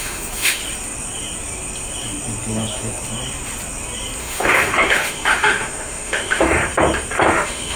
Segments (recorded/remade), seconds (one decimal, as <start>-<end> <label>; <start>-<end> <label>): 0.0-0.6 remade; 0.6-4.2 recorded; 4.2-6.6 remade; 6.6-7.3 recorded; 7.3-7.8 remade